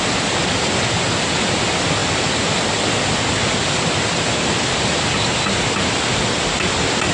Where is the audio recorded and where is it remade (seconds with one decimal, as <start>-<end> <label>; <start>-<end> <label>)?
0.0-7.1 recorded

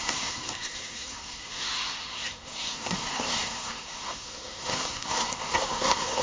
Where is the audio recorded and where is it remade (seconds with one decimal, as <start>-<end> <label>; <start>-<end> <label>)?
0.0-6.2 remade

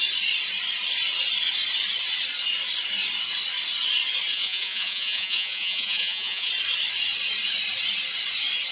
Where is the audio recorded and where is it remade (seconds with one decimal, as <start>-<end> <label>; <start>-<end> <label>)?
0.0-4.3 recorded; 4.3-6.5 remade; 6.5-8.7 recorded

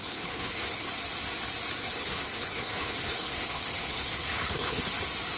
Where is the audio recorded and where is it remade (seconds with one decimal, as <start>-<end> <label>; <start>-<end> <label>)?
0.0-0.9 remade; 0.9-1.8 recorded; 1.8-4.8 remade; 4.8-5.4 recorded

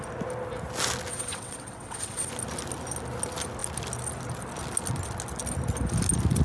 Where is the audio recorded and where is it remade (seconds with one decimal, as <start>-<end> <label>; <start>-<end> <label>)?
0.0-1.1 recorded; 1.1-2.3 remade; 2.3-6.4 recorded

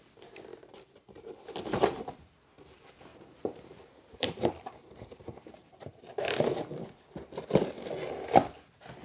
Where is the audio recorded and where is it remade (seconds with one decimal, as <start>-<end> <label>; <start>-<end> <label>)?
0.0-3.1 recorded; 3.1-6.3 remade; 6.3-9.0 recorded

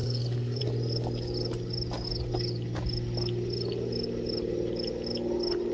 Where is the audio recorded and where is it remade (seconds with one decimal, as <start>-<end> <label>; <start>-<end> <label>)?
0.0-0.6 remade; 0.6-5.7 recorded

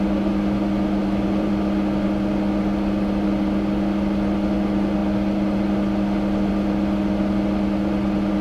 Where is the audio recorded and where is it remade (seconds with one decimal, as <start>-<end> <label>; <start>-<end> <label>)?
0.0-1.0 recorded; 1.0-1.5 remade; 1.5-8.4 recorded